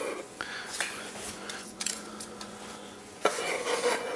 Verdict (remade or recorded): remade